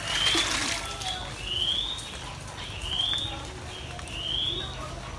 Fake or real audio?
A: real